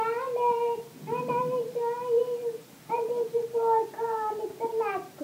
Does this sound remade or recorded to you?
recorded